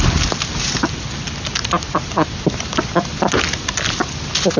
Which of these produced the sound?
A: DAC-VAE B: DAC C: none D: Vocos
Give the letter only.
C